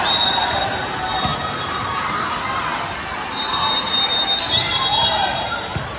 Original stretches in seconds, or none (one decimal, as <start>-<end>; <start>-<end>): 0.0-4.9; 5.4-6.0